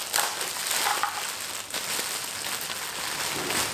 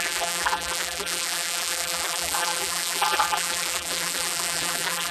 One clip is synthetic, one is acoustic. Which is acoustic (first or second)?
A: first